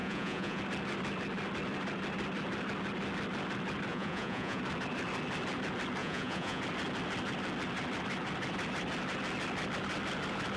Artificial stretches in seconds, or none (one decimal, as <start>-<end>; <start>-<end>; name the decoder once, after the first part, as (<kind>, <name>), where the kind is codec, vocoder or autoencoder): 0.0-0.6 (vocoder, Vocos); 3.9-4.6; 6.0-6.6